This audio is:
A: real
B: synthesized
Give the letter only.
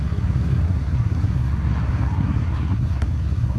B